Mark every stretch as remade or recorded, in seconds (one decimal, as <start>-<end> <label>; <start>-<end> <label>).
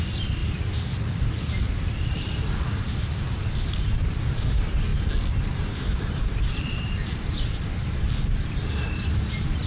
0.0-4.9 remade; 4.9-5.6 recorded; 5.6-9.7 remade